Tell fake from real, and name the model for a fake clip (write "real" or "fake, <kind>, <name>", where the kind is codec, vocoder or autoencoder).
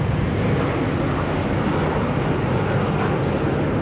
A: real